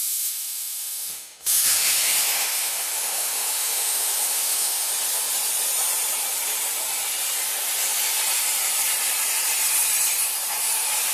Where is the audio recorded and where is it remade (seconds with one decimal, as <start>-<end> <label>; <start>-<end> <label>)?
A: 0.0-4.9 remade; 4.9-11.1 recorded